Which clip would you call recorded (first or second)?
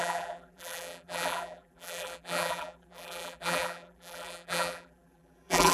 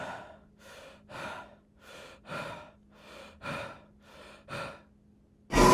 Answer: second